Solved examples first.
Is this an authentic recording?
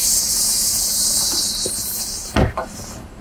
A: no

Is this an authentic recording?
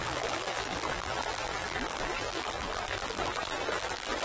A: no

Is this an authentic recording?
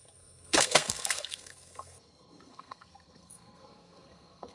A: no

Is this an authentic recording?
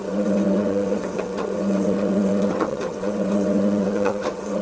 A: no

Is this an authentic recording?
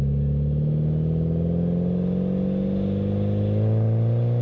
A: yes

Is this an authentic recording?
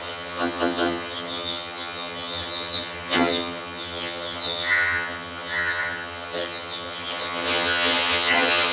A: no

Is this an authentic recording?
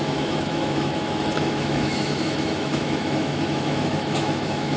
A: no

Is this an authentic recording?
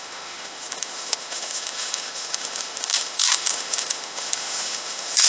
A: no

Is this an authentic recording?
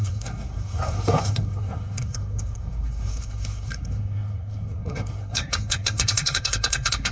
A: no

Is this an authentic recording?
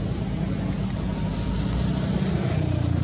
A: yes